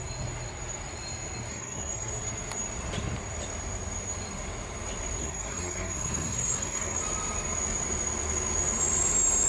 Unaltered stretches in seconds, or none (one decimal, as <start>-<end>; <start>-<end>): 0.0-1.5; 2.1-5.2; 7.0-9.5